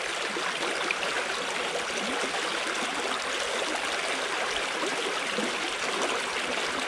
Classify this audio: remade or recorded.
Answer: recorded